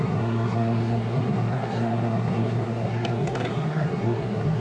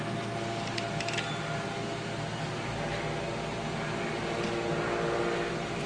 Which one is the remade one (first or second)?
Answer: first